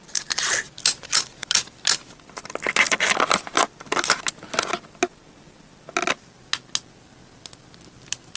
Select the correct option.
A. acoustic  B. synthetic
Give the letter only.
A